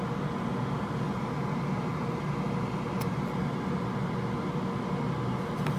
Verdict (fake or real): real